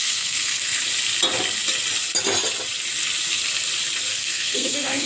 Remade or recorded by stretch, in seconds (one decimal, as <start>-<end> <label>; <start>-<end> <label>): 0.0-0.8 remade; 0.8-4.1 recorded; 4.1-5.1 remade